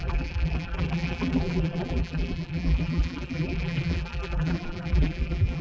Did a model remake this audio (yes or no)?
yes